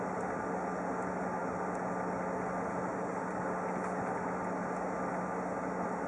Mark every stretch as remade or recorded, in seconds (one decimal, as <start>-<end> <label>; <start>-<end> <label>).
0.0-6.1 recorded